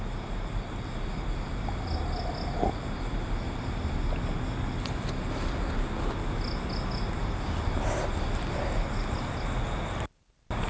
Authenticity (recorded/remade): recorded